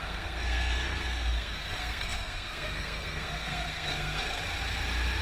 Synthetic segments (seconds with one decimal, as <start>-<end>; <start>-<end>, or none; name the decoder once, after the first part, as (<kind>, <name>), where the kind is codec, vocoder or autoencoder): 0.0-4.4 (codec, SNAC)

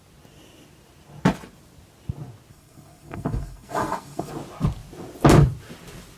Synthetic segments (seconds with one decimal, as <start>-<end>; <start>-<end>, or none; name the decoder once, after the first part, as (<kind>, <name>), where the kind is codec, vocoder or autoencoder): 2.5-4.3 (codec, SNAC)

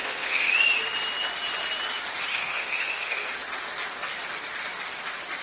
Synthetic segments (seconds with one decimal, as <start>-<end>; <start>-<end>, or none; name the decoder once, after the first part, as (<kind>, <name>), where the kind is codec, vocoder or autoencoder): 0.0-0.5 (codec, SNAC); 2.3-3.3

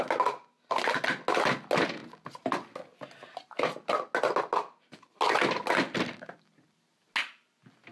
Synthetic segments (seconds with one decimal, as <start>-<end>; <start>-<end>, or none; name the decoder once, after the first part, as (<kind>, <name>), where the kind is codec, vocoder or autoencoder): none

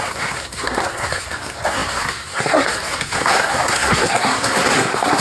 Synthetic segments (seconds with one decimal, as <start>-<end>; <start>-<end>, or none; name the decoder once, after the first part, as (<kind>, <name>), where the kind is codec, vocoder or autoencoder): 0.0-5.2 (codec, SNAC)

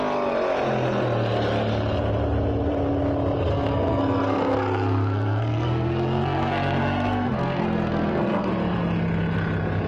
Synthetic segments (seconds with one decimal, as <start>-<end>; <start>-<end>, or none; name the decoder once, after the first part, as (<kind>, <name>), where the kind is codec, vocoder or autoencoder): 3.5-8.5 (codec, SNAC)

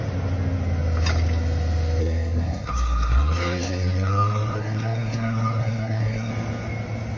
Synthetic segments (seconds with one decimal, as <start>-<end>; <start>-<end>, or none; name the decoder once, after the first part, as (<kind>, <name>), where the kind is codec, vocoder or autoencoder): 2.0-6.3 (codec, SNAC)